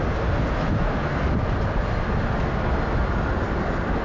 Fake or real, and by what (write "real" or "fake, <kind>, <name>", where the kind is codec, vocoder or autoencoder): real